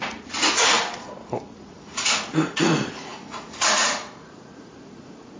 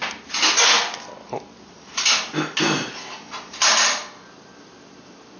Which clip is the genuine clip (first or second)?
second